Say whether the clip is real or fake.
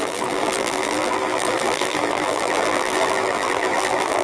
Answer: fake